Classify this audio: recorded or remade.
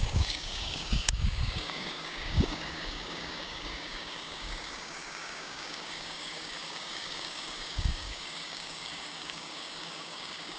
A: remade